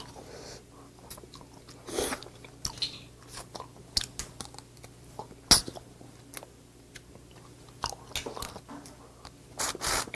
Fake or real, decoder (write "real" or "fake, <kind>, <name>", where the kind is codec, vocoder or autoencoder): real